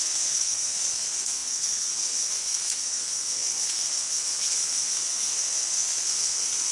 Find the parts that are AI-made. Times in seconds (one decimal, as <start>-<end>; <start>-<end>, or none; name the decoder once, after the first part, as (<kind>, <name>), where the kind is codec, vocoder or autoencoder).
0.0-6.7 (codec, SNAC)